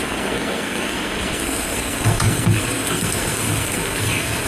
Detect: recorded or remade remade